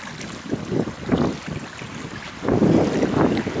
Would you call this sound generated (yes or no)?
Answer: no